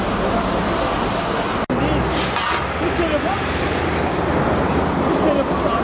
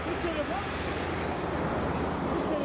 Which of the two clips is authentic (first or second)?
second